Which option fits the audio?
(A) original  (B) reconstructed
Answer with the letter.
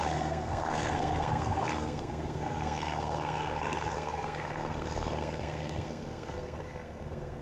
B